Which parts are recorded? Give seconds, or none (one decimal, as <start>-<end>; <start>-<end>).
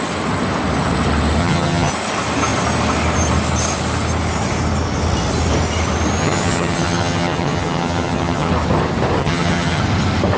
0.0-1.4; 1.9-6.2; 8.5-9.2; 9.8-10.4